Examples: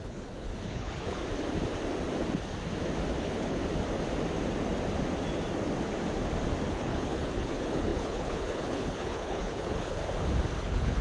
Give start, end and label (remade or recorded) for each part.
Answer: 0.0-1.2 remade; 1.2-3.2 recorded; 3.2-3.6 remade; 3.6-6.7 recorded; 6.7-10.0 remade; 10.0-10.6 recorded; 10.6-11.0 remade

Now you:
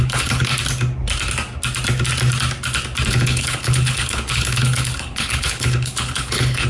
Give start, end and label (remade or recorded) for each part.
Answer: 0.0-0.5 remade; 0.5-3.1 recorded; 3.1-6.7 remade

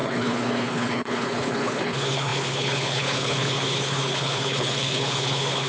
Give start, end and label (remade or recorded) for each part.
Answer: 0.0-5.7 remade

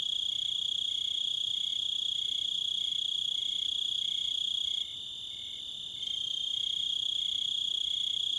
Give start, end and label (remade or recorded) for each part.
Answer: 0.0-8.4 recorded

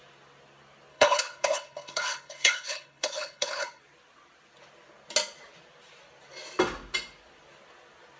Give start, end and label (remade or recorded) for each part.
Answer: 0.0-0.9 recorded; 0.9-3.8 remade; 3.8-8.2 recorded

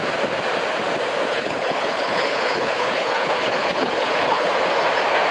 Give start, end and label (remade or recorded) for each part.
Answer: 0.0-1.3 recorded; 1.3-4.5 remade; 4.5-5.3 recorded

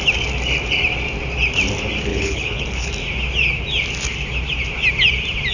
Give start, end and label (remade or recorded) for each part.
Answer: 0.0-2.1 recorded; 2.1-2.9 remade; 2.9-5.5 recorded

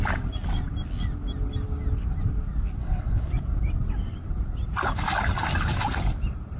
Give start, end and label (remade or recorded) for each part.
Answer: 0.0-2.8 recorded; 2.8-3.3 remade; 3.3-6.6 recorded